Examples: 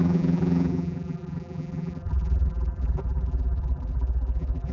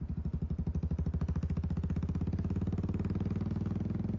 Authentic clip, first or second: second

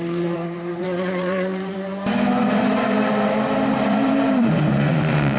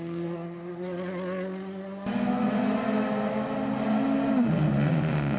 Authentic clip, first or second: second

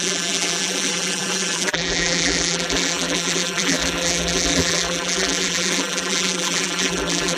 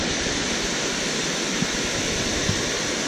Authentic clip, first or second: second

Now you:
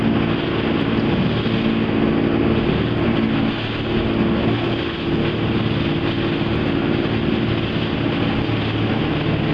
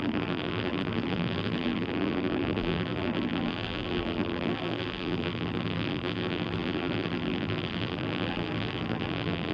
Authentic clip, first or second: first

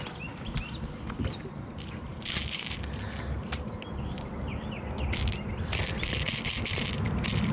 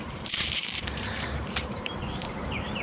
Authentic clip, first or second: first